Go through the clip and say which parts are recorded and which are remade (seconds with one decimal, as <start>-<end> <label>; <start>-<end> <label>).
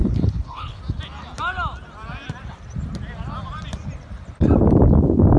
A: 0.0-0.8 remade; 0.8-5.4 recorded